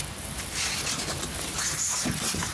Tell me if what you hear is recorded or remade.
recorded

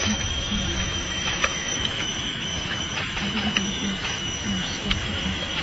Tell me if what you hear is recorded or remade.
remade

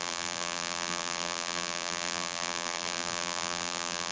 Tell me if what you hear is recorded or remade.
remade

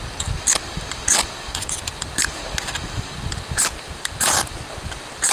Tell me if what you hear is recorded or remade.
recorded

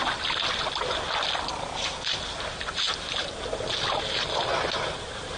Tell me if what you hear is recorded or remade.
recorded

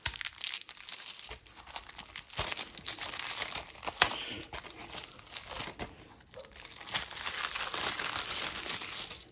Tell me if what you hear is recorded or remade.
recorded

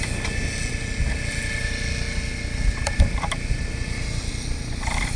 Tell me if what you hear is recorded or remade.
recorded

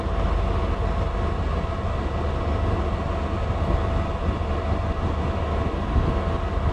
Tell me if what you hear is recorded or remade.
recorded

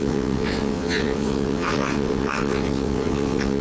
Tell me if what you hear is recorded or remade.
remade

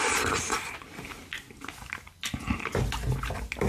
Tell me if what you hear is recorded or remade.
recorded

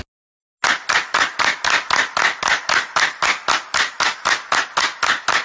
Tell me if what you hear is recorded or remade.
recorded